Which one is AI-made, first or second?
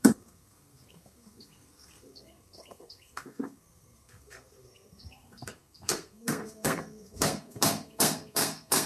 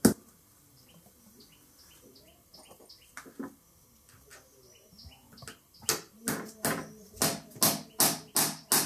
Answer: first